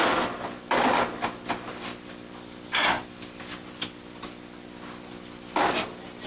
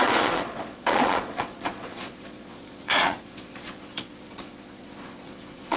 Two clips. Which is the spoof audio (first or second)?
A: second